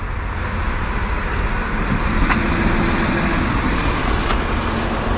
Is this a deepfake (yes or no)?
no